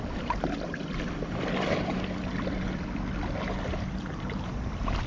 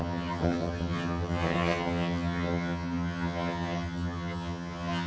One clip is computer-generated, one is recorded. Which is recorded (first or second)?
first